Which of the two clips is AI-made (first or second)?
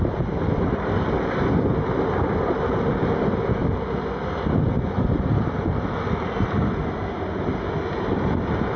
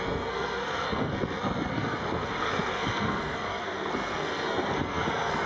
second